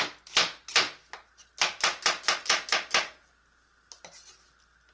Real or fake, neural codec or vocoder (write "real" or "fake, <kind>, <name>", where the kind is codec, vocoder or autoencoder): real